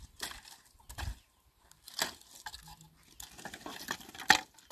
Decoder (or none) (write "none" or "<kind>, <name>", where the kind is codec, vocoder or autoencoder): none